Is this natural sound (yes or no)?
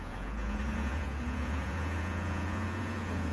no